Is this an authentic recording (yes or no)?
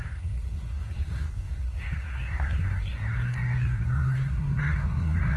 no